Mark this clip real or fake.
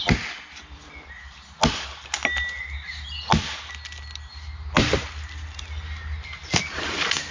real